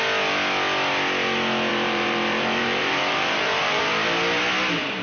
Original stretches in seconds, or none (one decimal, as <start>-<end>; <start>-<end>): 0.0-1.7; 3.8-5.0